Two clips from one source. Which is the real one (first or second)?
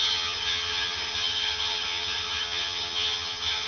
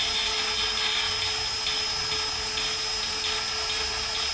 second